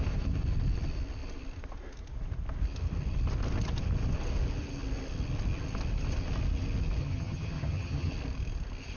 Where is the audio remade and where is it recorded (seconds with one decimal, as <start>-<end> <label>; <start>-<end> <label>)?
0.0-7.0 recorded; 7.0-8.1 remade; 8.1-9.0 recorded